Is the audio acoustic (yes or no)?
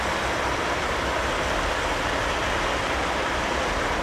yes